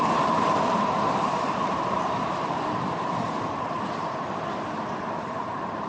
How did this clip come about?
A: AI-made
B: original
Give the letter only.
A